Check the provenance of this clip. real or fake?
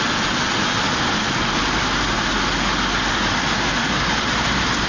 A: real